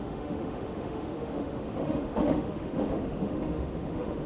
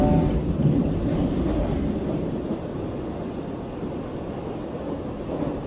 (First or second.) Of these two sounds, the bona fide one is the second